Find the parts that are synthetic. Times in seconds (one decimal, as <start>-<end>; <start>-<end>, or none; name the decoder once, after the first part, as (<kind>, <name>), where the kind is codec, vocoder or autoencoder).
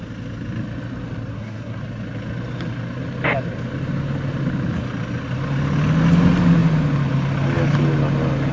1.3-1.8 (codec, SNAC)